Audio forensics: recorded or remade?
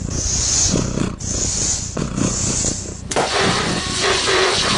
remade